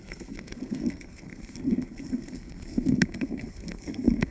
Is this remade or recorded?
remade